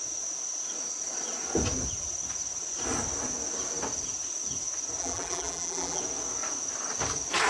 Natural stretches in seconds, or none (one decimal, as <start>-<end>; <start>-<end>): 0.0-5.0; 6.0-7.5